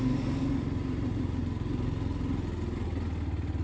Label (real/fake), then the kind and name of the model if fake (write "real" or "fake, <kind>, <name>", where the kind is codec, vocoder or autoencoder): real